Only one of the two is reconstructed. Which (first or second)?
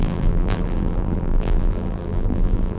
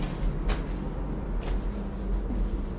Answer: first